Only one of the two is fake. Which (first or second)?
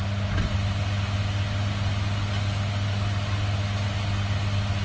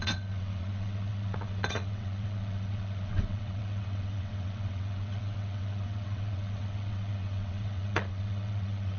second